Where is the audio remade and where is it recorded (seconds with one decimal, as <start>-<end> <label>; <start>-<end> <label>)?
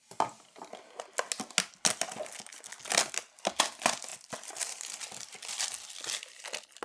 0.0-4.1 recorded; 4.1-5.9 remade; 5.9-6.8 recorded